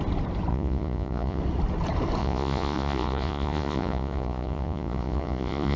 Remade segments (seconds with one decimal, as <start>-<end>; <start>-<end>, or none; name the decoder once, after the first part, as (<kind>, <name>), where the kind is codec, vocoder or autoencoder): 0.5-1.4 (vocoder, Vocos); 2.2-5.8

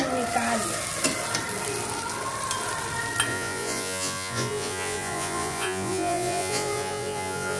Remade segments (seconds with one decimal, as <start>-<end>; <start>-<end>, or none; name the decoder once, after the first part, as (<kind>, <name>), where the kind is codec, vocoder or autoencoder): 3.3-7.6 (vocoder, Vocos)

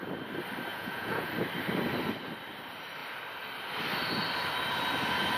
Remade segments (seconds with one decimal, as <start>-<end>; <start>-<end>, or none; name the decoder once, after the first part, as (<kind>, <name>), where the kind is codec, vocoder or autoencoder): 0.7-1.3 (vocoder, Vocos)

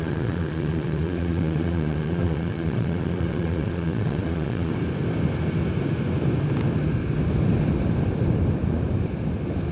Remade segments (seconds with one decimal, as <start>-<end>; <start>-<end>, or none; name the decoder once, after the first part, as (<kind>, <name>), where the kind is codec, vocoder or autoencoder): 0.0-4.7 (vocoder, Vocos)

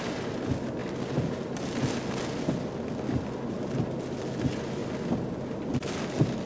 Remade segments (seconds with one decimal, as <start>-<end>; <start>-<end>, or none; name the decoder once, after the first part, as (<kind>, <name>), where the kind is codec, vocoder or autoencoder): none